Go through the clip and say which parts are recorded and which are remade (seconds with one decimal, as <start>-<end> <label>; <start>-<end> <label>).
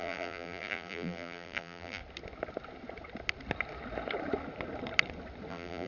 0.0-2.0 remade; 2.0-5.5 recorded; 5.5-5.9 remade